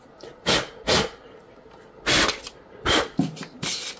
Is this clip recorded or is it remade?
recorded